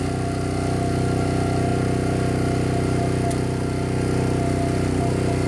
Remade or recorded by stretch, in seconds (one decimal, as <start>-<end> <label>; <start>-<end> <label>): 0.0-5.5 recorded

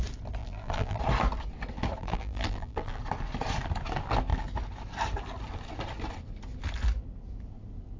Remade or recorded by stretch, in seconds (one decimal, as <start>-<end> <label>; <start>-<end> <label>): 0.0-0.4 recorded; 0.4-1.0 remade; 1.0-2.0 recorded; 2.0-3.0 remade; 3.0-8.0 recorded